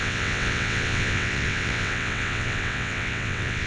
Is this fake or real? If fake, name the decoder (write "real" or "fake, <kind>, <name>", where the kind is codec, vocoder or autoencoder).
fake, vocoder, WaveNeXt